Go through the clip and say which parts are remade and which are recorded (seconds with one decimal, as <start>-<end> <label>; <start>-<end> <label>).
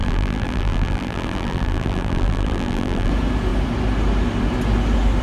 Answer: 0.0-3.1 remade; 3.1-5.2 recorded